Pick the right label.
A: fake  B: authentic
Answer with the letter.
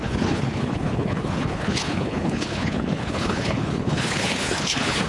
A